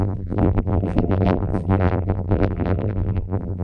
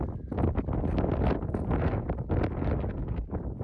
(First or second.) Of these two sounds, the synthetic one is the first